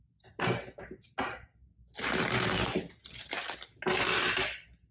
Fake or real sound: real